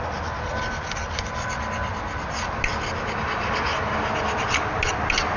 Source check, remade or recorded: recorded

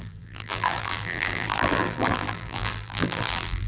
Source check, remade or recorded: remade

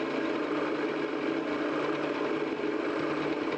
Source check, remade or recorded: remade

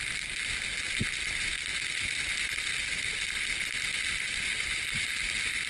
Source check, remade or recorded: recorded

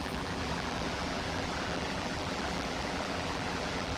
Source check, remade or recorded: remade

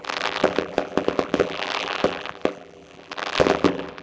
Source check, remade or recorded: remade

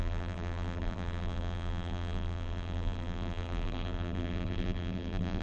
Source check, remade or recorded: remade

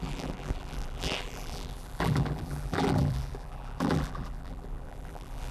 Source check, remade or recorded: remade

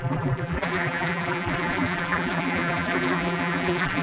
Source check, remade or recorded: remade